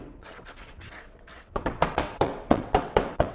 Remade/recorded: remade